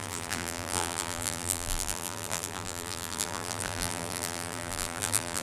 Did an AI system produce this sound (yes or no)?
yes